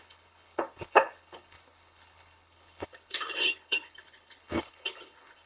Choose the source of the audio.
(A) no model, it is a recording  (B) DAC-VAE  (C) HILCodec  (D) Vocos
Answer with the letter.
C